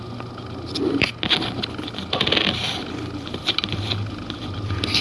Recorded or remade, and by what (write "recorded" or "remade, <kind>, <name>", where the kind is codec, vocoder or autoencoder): recorded